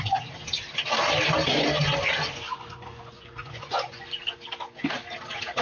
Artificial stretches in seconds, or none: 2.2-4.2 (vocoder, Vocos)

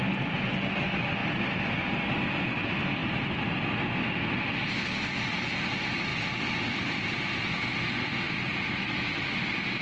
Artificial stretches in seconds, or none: none

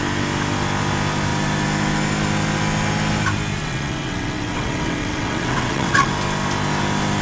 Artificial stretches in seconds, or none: 3.6-6.1 (vocoder, WaveNeXt)

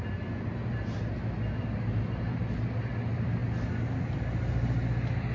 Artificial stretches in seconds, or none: none

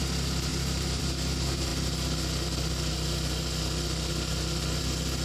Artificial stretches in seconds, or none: 0.5-1.0 (vocoder, BigVGAN v2)

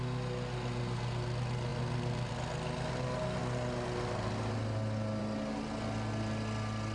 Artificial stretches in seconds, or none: none

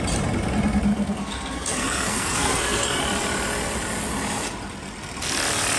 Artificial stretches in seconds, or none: 0.9-3.0 (codec, SNAC)